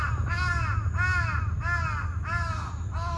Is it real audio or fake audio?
real